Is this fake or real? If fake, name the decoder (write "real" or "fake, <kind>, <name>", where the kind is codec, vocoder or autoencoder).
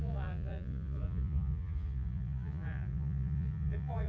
fake, vocoder, Vocos